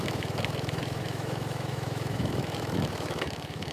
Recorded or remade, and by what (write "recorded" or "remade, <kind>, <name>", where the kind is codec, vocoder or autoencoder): remade, autoencoder, DAC-VAE